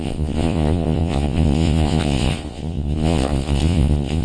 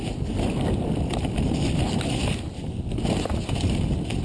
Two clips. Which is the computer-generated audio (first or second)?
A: first